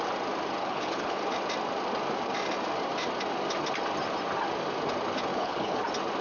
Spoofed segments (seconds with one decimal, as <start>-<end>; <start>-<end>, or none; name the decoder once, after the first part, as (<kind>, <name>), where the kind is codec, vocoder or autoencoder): 0.6-1.2 (codec, HILCodec); 5.3-5.8